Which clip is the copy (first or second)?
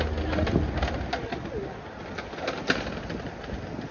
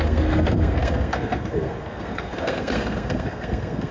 second